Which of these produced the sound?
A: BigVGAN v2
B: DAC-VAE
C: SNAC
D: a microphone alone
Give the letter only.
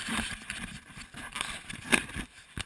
A